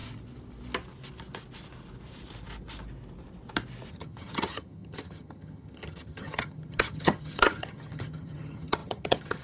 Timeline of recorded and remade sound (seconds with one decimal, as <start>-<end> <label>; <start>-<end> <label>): 0.0-3.9 recorded; 3.9-9.4 remade